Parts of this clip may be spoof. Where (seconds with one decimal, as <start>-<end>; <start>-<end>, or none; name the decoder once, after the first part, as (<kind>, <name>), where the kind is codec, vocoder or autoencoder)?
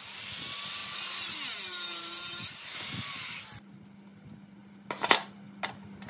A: none